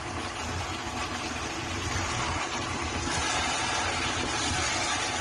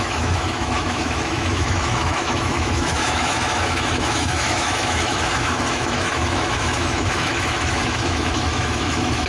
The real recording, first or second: first